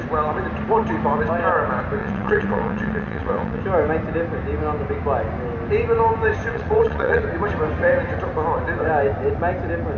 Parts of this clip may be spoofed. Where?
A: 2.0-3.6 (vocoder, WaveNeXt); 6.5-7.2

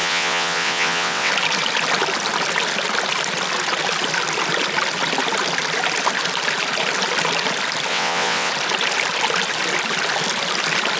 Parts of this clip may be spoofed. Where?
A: 0.0-1.3 (vocoder, WaveNeXt); 7.9-8.5